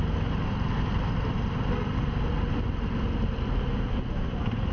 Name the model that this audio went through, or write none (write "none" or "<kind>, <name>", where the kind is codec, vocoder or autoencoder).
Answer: none